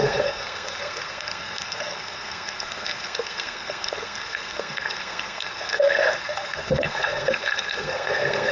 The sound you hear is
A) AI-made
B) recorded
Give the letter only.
A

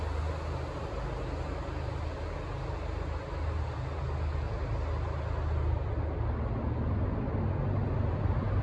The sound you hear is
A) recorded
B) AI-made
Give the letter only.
A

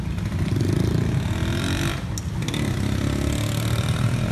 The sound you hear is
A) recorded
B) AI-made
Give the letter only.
A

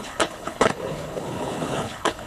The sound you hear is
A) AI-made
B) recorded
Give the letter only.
A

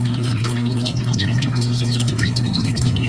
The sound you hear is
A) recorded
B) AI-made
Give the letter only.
B